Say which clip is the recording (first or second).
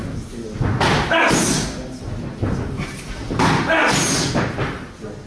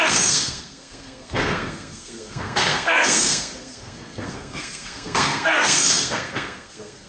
first